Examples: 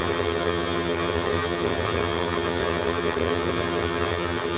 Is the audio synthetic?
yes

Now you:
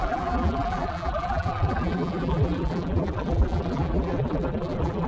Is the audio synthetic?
yes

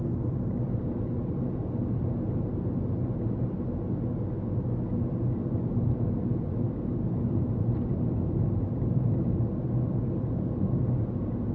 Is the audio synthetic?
no